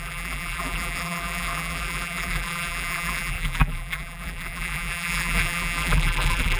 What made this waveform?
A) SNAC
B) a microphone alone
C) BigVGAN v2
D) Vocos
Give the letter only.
C